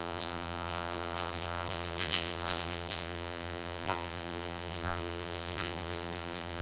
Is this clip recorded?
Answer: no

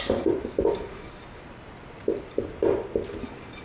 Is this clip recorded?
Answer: yes